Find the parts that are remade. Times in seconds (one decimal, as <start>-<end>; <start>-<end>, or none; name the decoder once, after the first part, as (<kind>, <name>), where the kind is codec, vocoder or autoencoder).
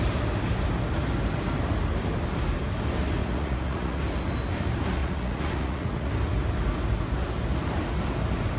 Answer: 3.2-4.0 (vocoder, Vocos); 5.0-6.1